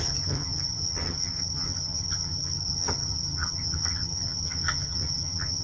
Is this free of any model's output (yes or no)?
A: no